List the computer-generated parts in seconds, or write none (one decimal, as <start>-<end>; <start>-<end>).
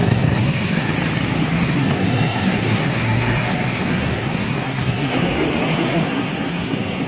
0.0-0.9; 1.4-7.1